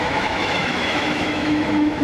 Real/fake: fake